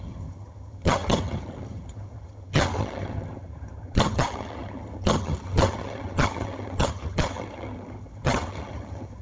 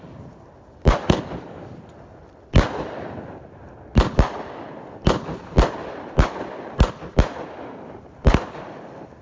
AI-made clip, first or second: first